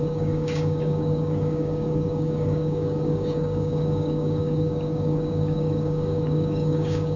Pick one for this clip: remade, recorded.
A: remade